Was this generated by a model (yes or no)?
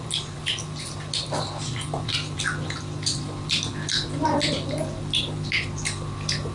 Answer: no